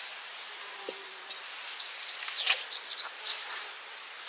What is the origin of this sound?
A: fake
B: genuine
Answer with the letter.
A